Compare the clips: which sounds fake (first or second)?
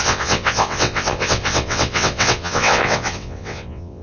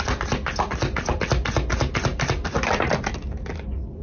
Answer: first